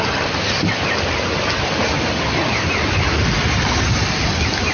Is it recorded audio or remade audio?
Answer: recorded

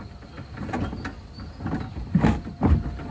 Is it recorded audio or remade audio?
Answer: recorded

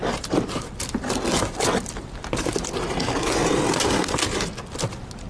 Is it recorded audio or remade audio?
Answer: recorded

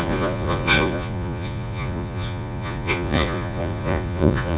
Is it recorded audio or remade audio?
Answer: remade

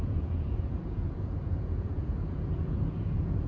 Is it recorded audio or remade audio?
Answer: remade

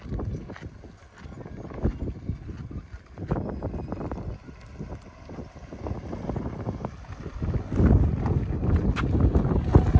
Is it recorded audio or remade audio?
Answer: recorded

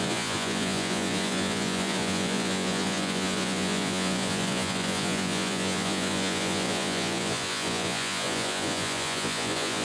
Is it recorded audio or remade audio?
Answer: remade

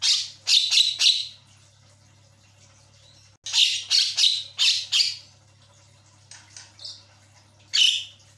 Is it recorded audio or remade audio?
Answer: recorded